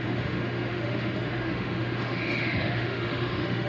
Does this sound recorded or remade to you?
remade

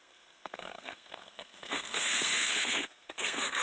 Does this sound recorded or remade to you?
remade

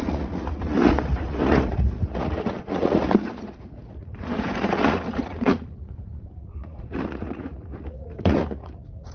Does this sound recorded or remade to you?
remade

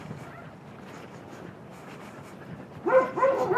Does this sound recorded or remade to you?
recorded